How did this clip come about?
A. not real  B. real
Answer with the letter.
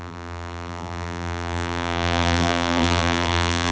A